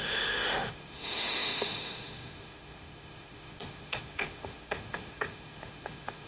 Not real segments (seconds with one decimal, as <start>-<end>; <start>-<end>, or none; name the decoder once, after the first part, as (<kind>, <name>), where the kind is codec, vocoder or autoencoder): 0.0-6.3 (autoencoder, DAC-VAE)